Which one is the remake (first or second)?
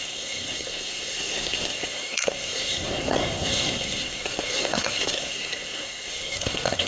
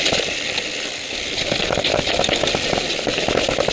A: first